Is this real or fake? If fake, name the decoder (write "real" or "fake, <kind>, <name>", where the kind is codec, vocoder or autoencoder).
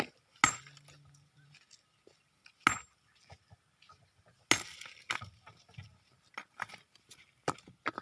real